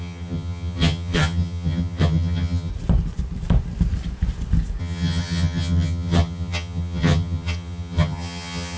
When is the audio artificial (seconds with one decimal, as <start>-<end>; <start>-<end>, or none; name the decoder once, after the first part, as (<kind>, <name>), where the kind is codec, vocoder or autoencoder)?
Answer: 0.0-2.7 (vocoder, HiFi-GAN); 4.8-8.8